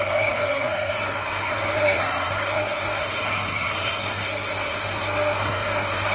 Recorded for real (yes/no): no